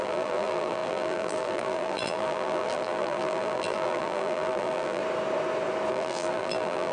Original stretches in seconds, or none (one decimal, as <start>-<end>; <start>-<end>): 5.0-5.9